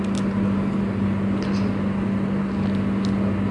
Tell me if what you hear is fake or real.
real